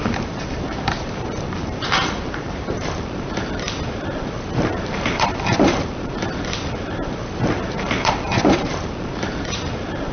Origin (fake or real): fake